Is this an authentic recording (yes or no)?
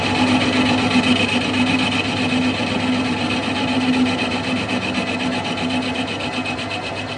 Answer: yes